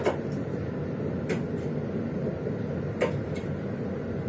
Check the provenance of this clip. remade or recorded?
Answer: recorded